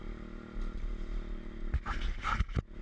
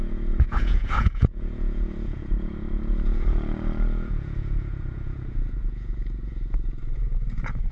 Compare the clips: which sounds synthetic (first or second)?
second